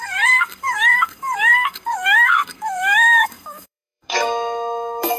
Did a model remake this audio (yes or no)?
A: yes